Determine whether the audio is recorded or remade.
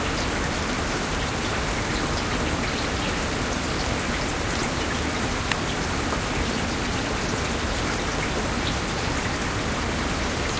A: recorded